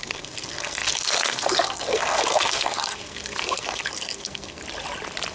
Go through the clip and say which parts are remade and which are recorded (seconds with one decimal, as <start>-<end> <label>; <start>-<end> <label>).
0.0-4.6 remade; 4.6-5.3 recorded